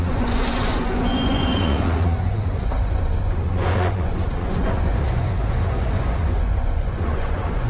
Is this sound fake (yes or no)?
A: yes